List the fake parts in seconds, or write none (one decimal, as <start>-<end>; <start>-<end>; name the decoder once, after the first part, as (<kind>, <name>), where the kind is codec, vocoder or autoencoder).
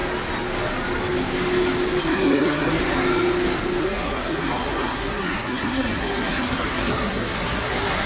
2.0-2.8 (codec, SNAC); 3.8-8.1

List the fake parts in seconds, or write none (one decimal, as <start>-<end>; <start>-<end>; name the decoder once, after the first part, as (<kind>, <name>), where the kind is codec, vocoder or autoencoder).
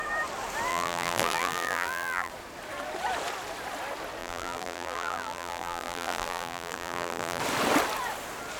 0.7-2.3 (vocoder, BigVGAN v2); 4.2-7.4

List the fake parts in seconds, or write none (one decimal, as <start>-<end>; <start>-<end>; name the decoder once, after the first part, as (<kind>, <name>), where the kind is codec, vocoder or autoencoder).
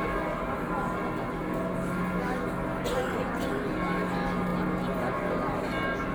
none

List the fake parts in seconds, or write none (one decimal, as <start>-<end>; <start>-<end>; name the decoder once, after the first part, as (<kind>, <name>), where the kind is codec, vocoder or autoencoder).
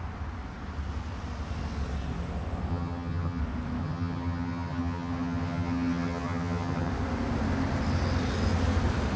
2.7-3.4 (vocoder, HiFi-GAN); 3.8-6.9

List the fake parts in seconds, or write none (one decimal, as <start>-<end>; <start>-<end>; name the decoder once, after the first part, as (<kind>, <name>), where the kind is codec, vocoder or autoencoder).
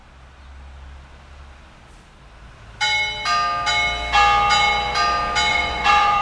5.5-6.2 (vocoder, Vocos)